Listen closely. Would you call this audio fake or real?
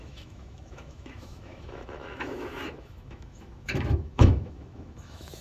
fake